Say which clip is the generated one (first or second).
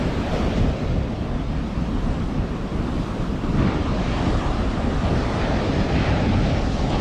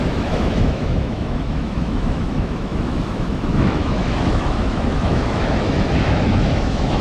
second